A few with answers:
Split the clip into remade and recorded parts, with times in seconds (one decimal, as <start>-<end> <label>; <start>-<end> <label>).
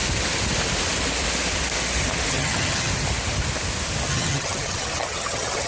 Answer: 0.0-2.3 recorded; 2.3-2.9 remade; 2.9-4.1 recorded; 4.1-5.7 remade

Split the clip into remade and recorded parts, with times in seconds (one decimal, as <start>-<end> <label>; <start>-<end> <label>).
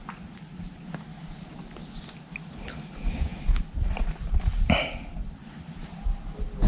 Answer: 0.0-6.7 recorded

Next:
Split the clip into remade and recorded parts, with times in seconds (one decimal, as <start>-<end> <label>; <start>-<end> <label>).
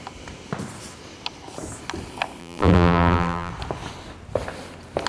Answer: 0.0-2.4 recorded; 2.4-3.5 remade; 3.5-5.1 recorded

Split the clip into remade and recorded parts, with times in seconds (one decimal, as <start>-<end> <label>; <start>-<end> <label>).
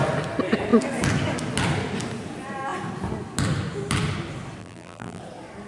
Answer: 0.0-4.6 recorded; 4.6-5.2 remade; 5.2-5.7 recorded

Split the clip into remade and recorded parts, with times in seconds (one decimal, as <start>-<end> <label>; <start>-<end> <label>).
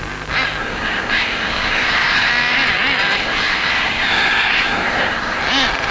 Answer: 0.0-0.6 recorded; 0.6-2.3 remade; 2.3-3.2 recorded; 3.2-5.4 remade; 5.4-5.9 recorded